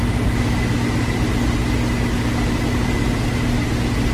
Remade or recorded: recorded